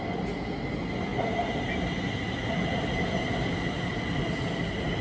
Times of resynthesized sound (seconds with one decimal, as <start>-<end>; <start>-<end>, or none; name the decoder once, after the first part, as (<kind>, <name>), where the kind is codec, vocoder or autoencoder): none